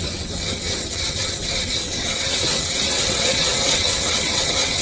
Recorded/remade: remade